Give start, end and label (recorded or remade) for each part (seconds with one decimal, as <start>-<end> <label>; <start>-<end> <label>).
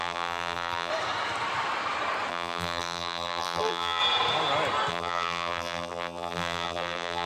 0.0-0.9 remade; 0.9-2.3 recorded; 2.3-4.0 remade; 4.0-4.9 recorded; 4.9-7.3 remade